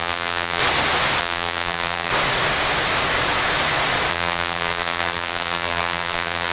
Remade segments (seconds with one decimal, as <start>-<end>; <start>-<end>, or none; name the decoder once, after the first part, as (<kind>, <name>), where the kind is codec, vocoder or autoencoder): 0.0-0.6 (vocoder, BigVGAN v2); 1.2-2.1; 4.1-6.5